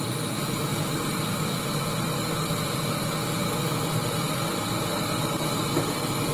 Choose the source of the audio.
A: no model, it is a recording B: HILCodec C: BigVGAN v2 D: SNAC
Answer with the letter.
A